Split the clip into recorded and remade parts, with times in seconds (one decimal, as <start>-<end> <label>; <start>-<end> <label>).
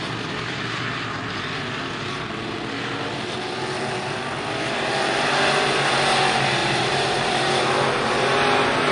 0.0-6.6 recorded; 6.6-7.5 remade; 7.5-8.9 recorded